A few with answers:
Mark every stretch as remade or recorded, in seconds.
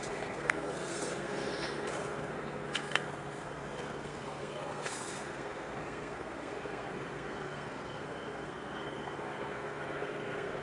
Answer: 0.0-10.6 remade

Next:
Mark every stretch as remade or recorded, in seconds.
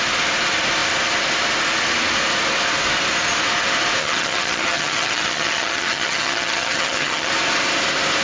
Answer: 0.0-4.0 recorded; 4.0-7.3 remade; 7.3-8.2 recorded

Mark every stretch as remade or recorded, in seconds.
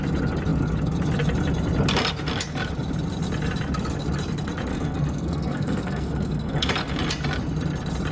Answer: 0.0-4.7 recorded; 4.7-6.7 remade; 6.7-8.1 recorded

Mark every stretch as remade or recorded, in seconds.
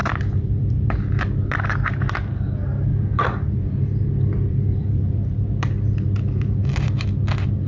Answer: 0.0-0.9 remade; 0.9-2.9 recorded; 2.9-7.1 remade; 7.1-7.7 recorded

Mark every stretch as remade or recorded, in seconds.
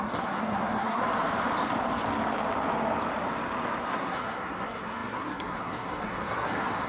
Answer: 0.0-1.0 remade; 1.0-3.8 recorded; 3.8-6.9 remade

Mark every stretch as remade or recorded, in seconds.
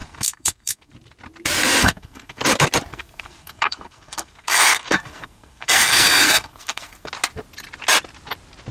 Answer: 0.0-0.9 remade; 0.9-1.8 recorded; 1.8-2.4 remade; 2.4-2.9 recorded; 2.9-7.1 remade; 7.1-8.7 recorded